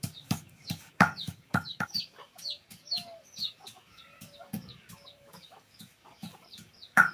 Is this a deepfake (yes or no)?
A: yes